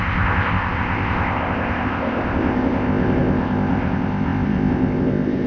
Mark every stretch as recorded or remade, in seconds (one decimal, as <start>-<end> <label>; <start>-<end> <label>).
0.0-5.5 remade